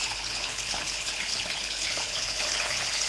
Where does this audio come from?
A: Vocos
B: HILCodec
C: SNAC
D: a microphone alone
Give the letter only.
B